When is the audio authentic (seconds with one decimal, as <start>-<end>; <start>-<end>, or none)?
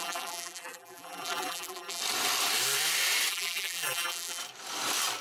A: 2.0-3.3; 4.4-5.2